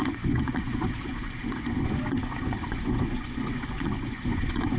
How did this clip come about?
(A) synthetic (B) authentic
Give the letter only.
A